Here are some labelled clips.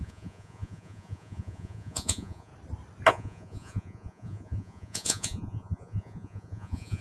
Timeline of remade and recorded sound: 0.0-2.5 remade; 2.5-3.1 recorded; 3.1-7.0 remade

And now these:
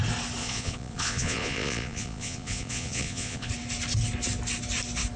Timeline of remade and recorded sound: 0.0-0.4 recorded; 0.4-3.5 remade; 3.5-5.2 recorded

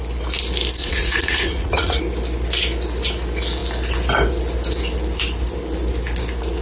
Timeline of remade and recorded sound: 0.0-0.8 recorded; 0.8-2.0 remade; 2.0-6.6 recorded

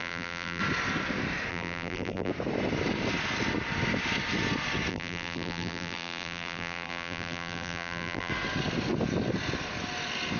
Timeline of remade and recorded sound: 0.0-0.6 remade; 0.6-1.5 recorded; 1.5-2.3 remade; 2.3-4.9 recorded; 4.9-8.3 remade; 8.3-10.4 recorded

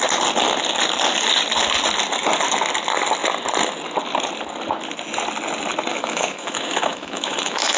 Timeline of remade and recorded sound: 0.0-5.9 recorded; 5.9-7.8 remade

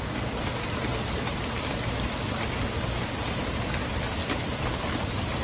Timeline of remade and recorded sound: 0.0-5.4 recorded

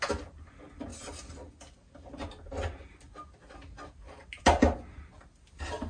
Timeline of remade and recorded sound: 0.0-5.9 recorded

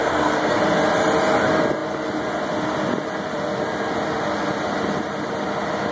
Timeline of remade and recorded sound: 0.0-0.6 remade; 0.6-5.9 recorded